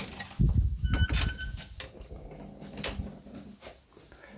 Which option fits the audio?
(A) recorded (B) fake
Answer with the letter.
A